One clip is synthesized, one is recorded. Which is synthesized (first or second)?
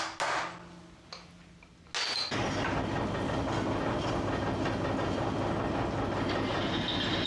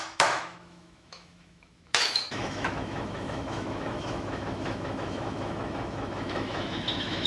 second